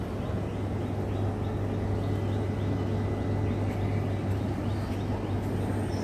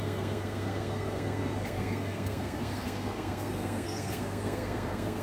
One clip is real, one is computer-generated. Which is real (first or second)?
first